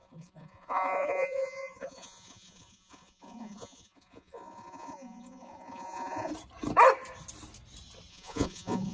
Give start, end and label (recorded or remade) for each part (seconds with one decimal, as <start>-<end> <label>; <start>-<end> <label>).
0.0-6.3 remade; 6.3-8.1 recorded; 8.1-8.9 remade